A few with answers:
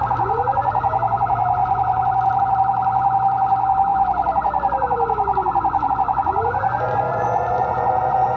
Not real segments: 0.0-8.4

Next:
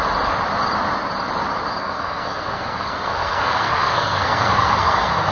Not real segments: 1.8-5.3

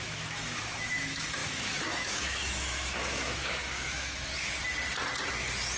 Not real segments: 0.0-4.3

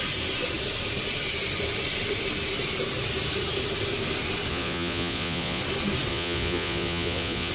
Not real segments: 4.5-5.6; 6.1-7.5

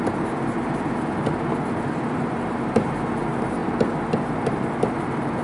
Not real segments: none